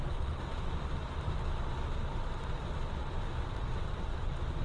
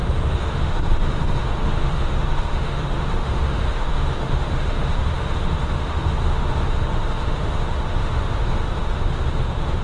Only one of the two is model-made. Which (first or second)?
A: second